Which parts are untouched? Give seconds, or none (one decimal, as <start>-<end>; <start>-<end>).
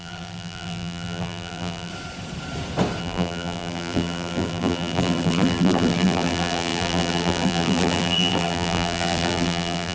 1.9-3.0